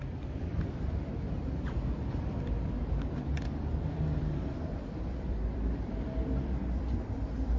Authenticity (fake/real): fake